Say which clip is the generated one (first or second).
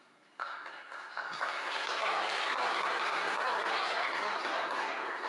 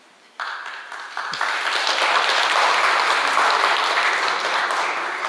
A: first